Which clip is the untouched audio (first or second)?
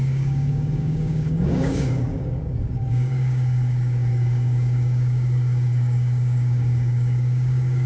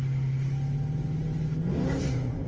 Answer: second